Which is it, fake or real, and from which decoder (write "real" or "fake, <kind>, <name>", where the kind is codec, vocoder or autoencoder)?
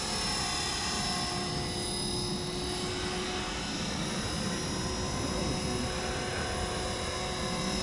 real